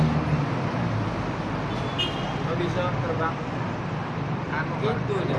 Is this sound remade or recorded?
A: recorded